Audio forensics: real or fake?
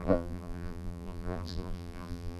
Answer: fake